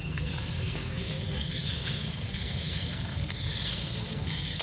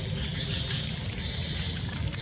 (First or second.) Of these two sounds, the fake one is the first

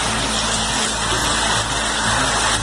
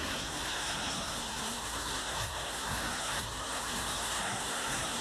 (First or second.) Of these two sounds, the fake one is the second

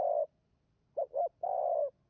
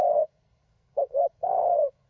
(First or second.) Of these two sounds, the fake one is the second